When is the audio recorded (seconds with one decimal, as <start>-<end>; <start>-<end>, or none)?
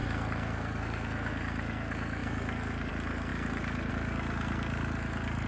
none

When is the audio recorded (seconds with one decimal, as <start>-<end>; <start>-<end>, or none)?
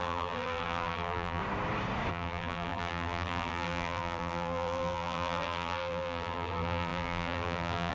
1.4-2.1